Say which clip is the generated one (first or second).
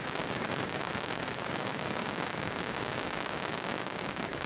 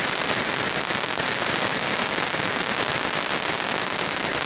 first